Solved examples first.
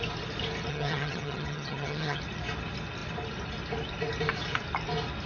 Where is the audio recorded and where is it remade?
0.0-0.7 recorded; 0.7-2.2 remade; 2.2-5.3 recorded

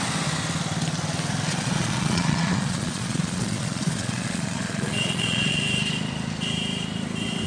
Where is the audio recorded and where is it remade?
0.0-1.5 recorded; 1.5-5.6 remade; 5.6-7.5 recorded

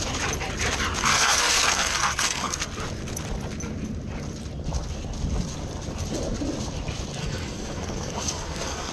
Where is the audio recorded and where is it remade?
0.0-1.0 recorded; 1.0-2.6 remade; 2.6-7.2 recorded; 7.2-8.9 remade